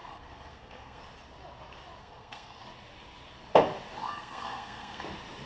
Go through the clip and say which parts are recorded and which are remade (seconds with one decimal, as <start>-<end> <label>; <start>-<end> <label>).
0.0-1.0 remade; 1.0-2.0 recorded; 2.0-2.6 remade; 2.6-4.0 recorded; 4.0-5.0 remade; 5.0-5.5 recorded